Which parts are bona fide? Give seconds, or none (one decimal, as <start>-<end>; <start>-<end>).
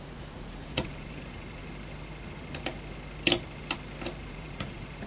1.6-4.3